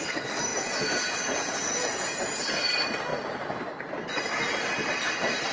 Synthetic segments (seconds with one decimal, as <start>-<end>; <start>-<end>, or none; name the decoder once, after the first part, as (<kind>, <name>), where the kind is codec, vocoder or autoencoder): 0.5-2.4 (vocoder, Vocos)